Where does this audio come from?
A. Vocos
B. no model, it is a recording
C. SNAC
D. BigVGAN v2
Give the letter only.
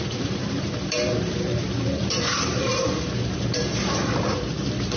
D